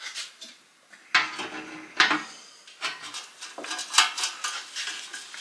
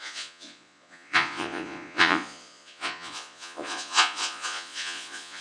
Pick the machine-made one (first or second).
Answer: second